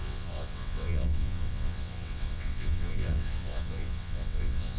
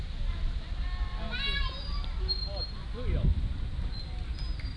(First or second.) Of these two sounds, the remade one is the first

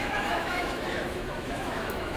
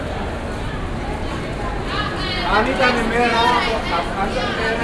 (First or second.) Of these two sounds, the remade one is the first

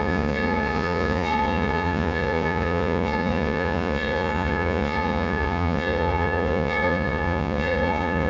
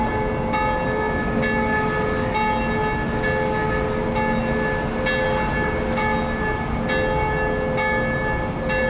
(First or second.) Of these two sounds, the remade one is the first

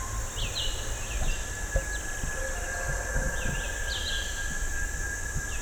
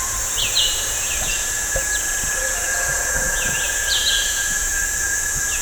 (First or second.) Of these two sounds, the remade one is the second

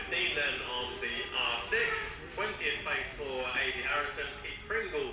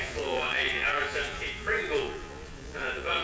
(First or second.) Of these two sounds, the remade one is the second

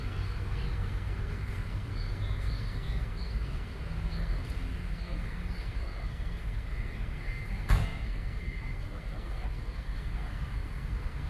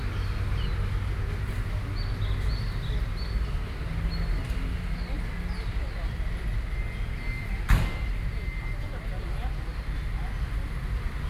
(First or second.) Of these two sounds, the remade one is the first